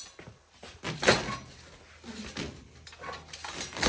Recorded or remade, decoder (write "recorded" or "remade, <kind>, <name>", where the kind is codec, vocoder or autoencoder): recorded